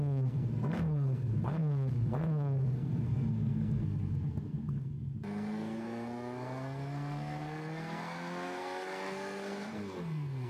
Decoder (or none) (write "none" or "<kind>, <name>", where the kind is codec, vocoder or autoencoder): codec, SNAC